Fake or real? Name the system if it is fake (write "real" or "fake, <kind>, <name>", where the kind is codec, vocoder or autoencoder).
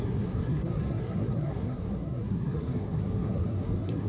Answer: fake, codec, SNAC